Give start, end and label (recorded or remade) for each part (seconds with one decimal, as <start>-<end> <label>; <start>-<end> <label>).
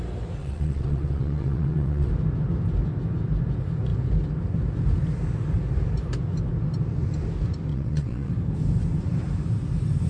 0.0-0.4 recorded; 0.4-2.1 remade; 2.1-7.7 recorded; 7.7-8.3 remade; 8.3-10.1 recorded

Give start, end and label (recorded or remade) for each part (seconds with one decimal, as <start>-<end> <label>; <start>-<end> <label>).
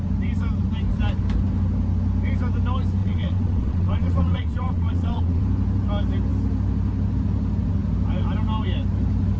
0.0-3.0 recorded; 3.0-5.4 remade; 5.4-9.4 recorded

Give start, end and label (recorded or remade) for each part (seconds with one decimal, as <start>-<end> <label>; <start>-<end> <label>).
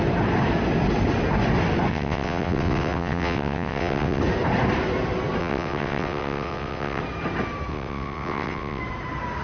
0.0-1.9 recorded; 1.9-4.2 remade; 4.2-5.4 recorded; 5.4-7.0 remade; 7.0-7.7 recorded; 7.7-8.8 remade; 8.8-9.4 recorded